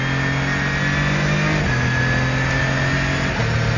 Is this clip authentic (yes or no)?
yes